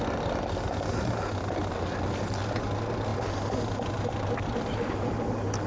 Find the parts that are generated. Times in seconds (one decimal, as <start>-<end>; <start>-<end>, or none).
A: none